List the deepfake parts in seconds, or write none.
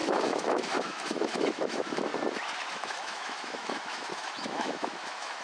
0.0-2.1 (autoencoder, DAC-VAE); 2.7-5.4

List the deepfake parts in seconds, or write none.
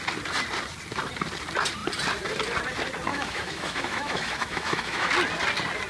3.1-5.1 (autoencoder, DAC-VAE)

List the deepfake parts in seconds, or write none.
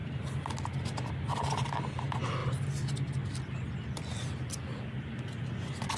none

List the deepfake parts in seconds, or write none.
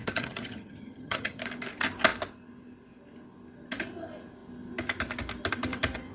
0.0-1.4 (vocoder, HiFi-GAN)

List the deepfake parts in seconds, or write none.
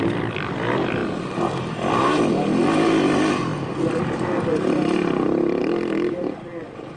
none